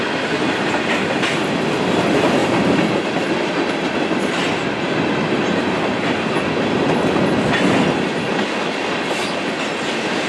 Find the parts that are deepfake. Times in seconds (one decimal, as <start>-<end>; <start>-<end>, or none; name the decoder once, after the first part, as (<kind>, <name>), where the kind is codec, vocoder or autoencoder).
2.4-3.1 (vocoder, BigVGAN v2)